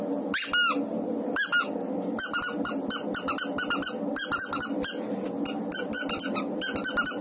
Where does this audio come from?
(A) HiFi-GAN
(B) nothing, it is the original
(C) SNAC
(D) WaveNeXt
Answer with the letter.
B